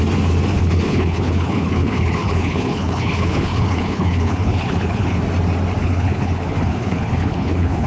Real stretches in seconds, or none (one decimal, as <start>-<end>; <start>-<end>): 0.0-0.5; 5.2-5.8